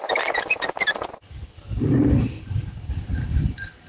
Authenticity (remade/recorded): recorded